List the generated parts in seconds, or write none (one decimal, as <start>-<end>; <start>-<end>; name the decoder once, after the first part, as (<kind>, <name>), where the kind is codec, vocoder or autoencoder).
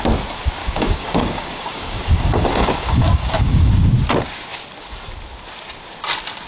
0.6-3.7 (codec, DAC)